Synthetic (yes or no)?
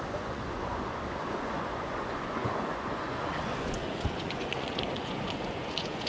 yes